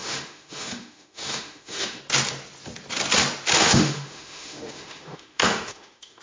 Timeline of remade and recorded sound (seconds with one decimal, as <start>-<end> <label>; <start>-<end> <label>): 0.0-2.0 remade; 2.0-3.6 recorded; 3.6-6.2 remade